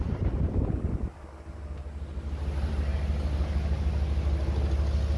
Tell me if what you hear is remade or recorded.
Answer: recorded